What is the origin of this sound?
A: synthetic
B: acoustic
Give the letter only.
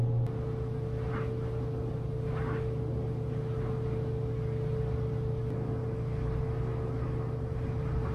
B